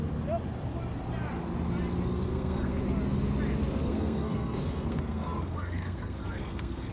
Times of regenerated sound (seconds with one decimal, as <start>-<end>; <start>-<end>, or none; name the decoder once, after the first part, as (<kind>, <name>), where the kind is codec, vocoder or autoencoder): 2.3-2.8 (codec, SNAC); 3.8-6.9